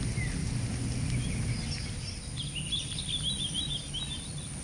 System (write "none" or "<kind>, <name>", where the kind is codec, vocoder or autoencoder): none